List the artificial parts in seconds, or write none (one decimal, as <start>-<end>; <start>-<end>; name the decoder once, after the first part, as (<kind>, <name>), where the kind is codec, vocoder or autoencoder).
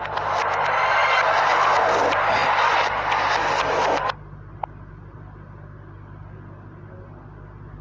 none